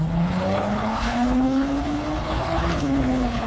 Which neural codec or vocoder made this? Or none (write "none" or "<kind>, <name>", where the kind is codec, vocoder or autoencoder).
codec, HILCodec